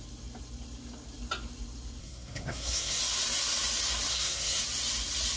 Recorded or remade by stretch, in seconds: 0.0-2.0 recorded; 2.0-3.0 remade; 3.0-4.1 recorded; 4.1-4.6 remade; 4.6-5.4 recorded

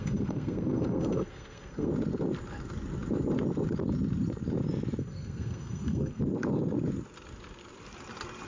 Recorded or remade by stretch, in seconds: 0.0-1.9 remade; 1.9-5.0 recorded; 5.0-6.2 remade; 6.2-8.5 recorded

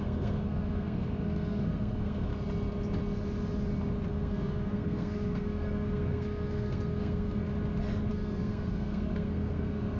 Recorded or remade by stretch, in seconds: 0.0-2.3 remade; 2.3-4.1 recorded; 4.1-7.5 remade; 7.5-8.1 recorded; 8.1-10.0 remade